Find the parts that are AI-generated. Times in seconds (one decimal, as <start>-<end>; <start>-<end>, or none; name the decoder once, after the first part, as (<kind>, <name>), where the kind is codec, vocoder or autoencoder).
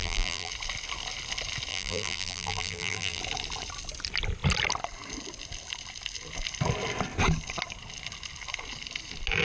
0.0-0.5 (vocoder, BigVGAN v2); 1.7-3.2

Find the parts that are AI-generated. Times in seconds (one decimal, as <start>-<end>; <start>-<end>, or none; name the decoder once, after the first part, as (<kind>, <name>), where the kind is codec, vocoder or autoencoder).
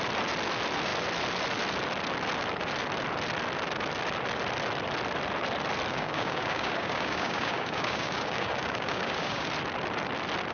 5.9-9.5 (codec, DAC)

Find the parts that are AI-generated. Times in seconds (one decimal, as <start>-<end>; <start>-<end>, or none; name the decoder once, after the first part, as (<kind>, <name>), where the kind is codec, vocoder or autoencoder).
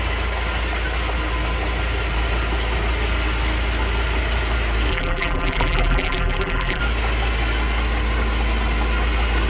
4.9-6.8 (vocoder, BigVGAN v2)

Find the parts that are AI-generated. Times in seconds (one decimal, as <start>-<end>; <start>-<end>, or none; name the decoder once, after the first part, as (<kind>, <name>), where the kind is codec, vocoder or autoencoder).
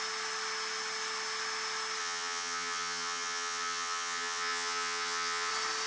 2.0-5.5 (vocoder, HiFi-GAN)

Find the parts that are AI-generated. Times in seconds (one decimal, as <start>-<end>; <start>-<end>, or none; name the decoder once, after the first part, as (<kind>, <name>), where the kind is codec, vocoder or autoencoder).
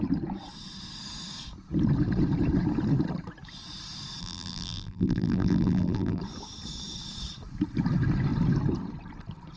4.2-6.2 (vocoder, BigVGAN v2)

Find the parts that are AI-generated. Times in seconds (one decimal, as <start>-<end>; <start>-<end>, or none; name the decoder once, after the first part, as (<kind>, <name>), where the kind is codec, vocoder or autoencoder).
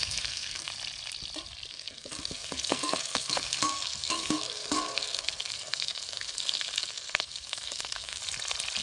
0.0-0.7 (codec, SNAC); 1.7-8.2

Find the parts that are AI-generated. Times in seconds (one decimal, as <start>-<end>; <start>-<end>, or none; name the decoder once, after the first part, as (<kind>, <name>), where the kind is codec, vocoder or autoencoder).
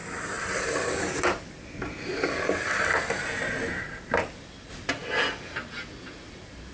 none